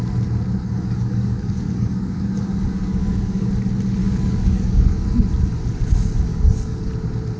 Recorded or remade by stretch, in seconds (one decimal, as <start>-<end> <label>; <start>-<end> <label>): 0.0-0.6 recorded; 0.6-3.5 remade; 3.5-4.0 recorded; 4.0-5.2 remade; 5.2-6.3 recorded; 6.3-6.9 remade; 6.9-7.4 recorded